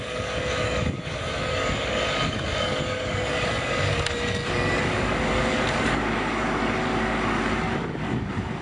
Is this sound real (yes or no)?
no